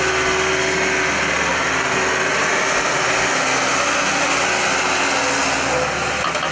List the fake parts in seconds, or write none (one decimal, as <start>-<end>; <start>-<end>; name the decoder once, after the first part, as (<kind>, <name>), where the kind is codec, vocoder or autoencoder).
none